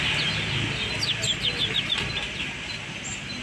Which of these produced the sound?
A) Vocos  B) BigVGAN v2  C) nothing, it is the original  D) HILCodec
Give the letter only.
C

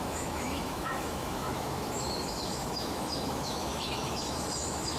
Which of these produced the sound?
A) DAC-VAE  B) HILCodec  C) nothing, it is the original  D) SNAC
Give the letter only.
A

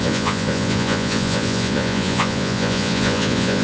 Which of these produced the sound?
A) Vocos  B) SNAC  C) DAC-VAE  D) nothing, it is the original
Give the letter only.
A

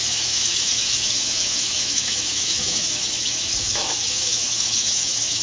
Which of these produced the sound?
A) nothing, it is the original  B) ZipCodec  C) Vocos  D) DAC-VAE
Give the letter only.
D